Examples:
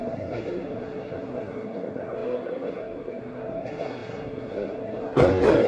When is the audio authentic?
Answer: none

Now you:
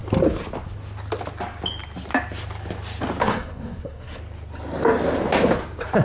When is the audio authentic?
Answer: 0.0-3.2; 4.2-6.0

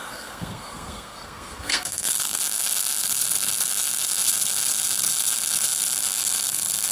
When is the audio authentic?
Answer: 2.4-6.9

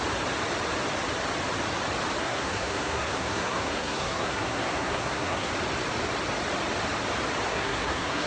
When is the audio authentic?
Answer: 0.0-2.2; 5.5-7.5

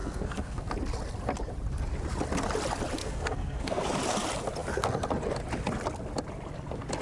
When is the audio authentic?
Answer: 0.7-3.0; 3.8-7.0

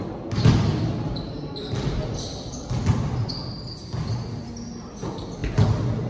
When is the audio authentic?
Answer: 0.0-6.1